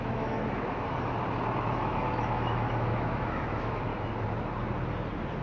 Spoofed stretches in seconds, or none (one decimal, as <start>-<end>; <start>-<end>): 0.0-0.4; 1.6-3.9